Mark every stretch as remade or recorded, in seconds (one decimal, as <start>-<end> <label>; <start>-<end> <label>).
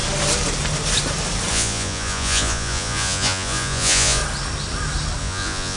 0.0-1.5 recorded; 1.5-4.2 remade; 4.2-5.2 recorded; 5.2-5.8 remade